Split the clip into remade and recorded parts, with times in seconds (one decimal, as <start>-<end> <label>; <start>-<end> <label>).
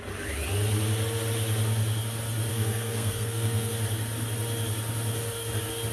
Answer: 0.0-2.5 recorded; 2.5-3.7 remade; 3.7-5.9 recorded